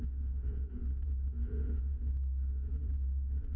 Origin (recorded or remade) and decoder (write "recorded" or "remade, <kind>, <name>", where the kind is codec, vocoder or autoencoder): remade, autoencoder, DAC-VAE